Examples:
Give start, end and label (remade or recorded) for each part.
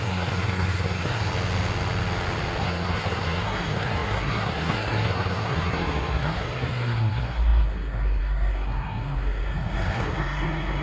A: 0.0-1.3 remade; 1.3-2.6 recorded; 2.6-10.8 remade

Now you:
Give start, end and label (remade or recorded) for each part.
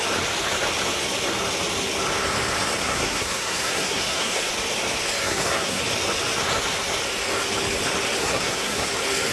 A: 0.0-2.8 recorded; 2.8-4.5 remade; 4.5-5.2 recorded; 5.2-5.8 remade; 5.8-8.2 recorded; 8.2-8.9 remade; 8.9-9.3 recorded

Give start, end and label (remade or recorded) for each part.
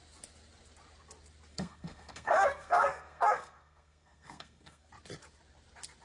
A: 0.0-1.5 recorded; 1.5-4.9 remade; 4.9-6.0 recorded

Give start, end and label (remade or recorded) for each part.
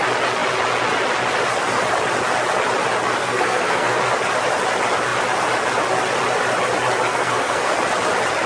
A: 0.0-3.2 recorded; 3.2-4.0 remade; 4.0-7.1 recorded; 7.1-7.7 remade; 7.7-8.5 recorded